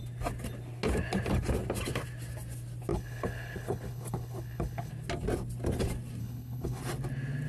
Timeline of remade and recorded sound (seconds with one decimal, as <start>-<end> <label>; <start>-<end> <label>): 0.0-2.9 recorded; 2.9-4.9 remade; 4.9-6.2 recorded; 6.2-6.8 remade; 6.8-7.5 recorded